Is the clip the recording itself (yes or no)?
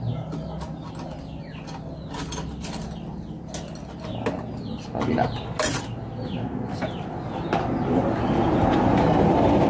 yes